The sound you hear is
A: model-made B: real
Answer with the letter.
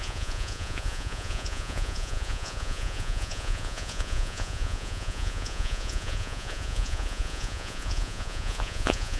A